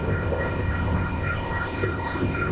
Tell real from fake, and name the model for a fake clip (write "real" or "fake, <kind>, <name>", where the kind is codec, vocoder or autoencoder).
fake, codec, ZipCodec